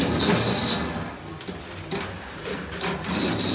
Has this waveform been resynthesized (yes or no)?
no